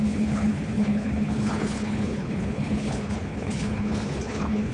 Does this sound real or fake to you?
fake